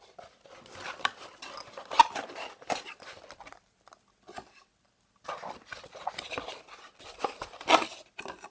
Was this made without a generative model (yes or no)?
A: yes